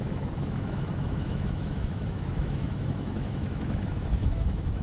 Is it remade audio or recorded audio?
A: remade